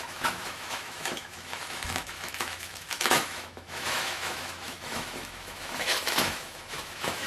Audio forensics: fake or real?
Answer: fake